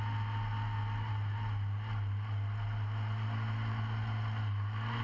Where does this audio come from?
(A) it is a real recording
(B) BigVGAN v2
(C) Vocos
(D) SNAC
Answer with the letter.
A